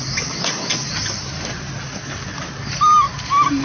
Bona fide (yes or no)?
yes